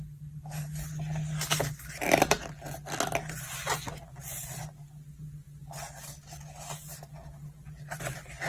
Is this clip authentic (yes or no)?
yes